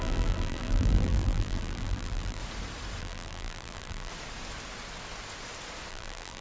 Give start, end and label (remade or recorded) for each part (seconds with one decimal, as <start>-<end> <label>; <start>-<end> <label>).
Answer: 0.0-2.4 remade; 2.4-3.0 recorded; 3.0-4.1 remade; 4.1-5.9 recorded; 5.9-6.4 remade